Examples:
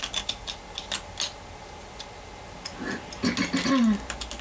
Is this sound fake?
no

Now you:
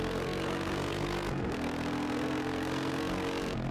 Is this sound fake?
yes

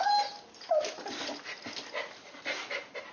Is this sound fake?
no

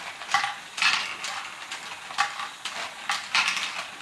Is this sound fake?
no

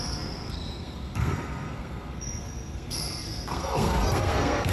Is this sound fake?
yes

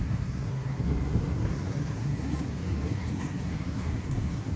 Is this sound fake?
yes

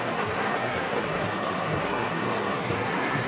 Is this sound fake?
yes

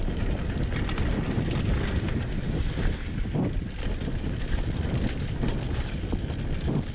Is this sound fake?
no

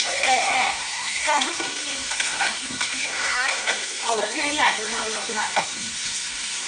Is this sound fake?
yes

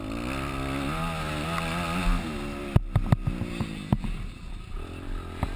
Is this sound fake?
no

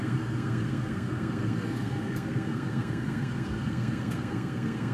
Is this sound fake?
yes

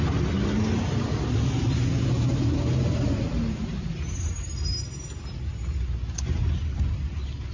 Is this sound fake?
no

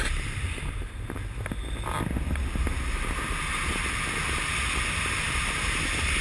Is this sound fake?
no